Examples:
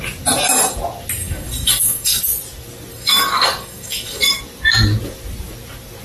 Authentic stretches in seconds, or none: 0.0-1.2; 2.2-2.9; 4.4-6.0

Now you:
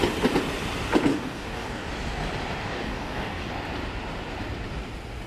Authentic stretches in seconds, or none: 0.0-1.1; 1.9-2.6; 3.5-5.3

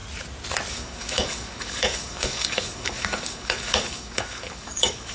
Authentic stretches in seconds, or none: 0.0-0.7

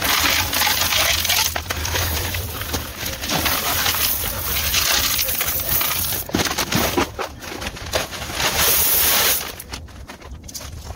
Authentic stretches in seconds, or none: 0.0-1.8; 2.4-11.0

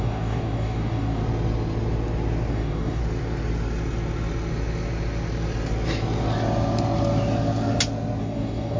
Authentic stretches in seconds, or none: 1.2-2.5; 3.0-8.2